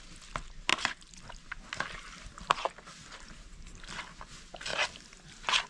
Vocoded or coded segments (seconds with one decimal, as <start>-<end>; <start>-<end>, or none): none